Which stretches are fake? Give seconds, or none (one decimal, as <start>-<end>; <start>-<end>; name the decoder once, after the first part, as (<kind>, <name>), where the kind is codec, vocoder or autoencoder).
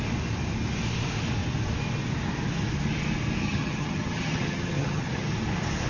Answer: 3.4-5.3 (vocoder, HiFi-GAN)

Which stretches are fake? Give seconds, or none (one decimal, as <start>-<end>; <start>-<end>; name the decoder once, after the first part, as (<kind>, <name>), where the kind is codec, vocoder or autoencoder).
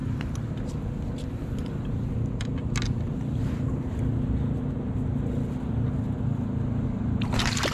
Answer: none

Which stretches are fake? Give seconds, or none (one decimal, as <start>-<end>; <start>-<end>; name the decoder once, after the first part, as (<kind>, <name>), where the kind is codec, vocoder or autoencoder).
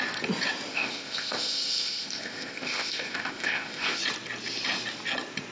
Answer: 0.7-4.0 (codec, ZipCodec)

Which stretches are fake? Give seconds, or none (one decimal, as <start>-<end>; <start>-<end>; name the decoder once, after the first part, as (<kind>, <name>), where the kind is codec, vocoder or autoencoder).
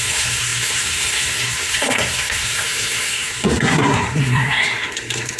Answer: 0.0-5.4 (codec, SNAC)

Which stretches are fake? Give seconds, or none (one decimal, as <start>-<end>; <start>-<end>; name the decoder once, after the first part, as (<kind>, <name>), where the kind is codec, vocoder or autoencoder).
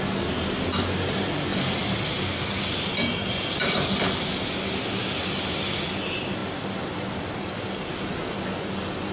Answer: 6.4-7.9 (vocoder, BigVGAN v2)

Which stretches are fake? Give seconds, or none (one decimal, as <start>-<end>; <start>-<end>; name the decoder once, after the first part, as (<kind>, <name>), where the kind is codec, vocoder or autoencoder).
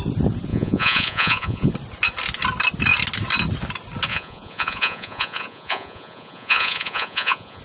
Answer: 0.5-1.7 (vocoder, Vocos); 4.1-7.6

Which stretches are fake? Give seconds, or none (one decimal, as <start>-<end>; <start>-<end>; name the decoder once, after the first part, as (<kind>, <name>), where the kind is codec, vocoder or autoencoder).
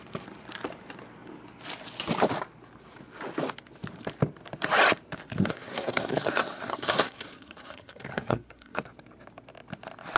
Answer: 5.4-8.8 (codec, SNAC)